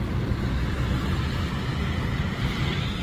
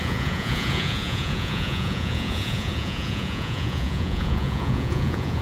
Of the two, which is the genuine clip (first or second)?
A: first